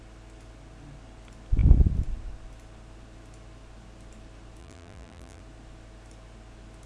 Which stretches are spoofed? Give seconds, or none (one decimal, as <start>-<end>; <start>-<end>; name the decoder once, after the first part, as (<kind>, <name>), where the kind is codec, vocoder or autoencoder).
4.6-5.4 (vocoder, BigVGAN v2)